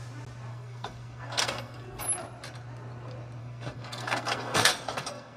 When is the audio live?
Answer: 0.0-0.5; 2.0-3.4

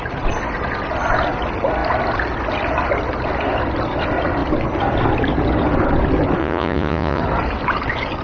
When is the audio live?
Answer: 0.0-6.4; 7.2-8.2